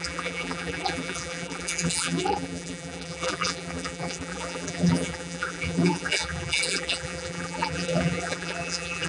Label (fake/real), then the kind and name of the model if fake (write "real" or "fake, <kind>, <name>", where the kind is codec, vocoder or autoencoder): fake, vocoder, BigVGAN v2